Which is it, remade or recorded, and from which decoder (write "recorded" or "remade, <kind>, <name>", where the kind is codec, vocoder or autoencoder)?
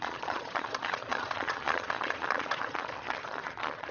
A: remade, vocoder, Vocos